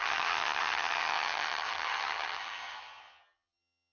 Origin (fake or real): fake